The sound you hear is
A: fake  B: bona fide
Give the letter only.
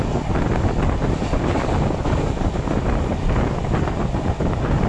B